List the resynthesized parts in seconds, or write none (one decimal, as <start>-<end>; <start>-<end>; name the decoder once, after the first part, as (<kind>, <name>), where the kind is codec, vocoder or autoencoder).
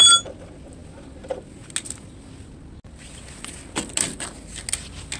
none